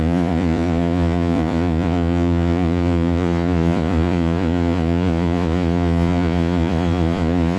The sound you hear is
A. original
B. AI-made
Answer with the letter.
B